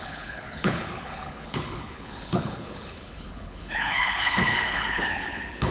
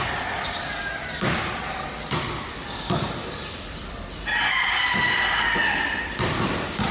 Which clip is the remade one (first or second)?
first